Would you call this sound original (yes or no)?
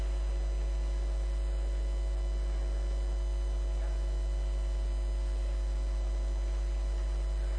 yes